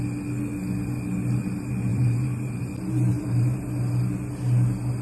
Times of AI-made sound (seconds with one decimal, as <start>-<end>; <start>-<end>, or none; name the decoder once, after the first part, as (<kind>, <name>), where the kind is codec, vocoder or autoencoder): 1.9-2.6 (vocoder, BigVGAN v2); 3.1-3.6